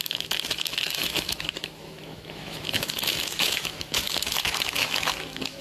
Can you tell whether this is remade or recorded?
remade